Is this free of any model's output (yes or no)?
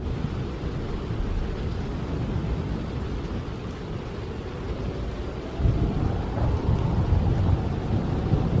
yes